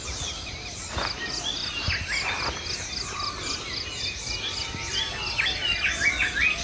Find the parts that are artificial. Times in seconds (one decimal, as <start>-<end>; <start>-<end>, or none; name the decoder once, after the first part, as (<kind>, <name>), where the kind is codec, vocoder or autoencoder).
none